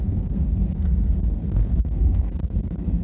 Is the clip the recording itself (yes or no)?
no